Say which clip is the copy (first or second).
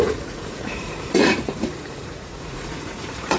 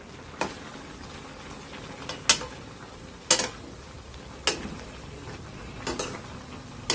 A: first